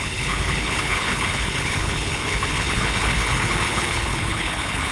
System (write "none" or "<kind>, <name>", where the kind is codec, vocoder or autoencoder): codec, HILCodec